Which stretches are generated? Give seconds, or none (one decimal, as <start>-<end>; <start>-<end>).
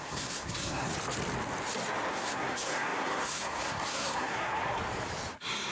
0.0-0.9; 2.1-4.8; 5.3-5.7